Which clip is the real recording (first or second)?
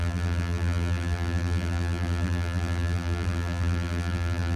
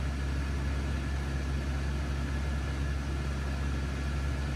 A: second